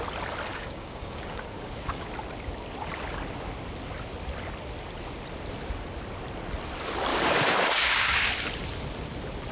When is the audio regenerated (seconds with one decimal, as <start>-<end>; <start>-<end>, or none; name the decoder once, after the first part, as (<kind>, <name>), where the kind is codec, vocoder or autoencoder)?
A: 0.5-2.1 (codec, DAC); 7.1-8.3